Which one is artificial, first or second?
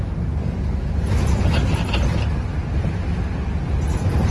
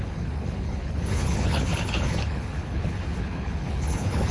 second